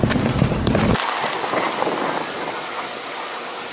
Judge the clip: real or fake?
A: real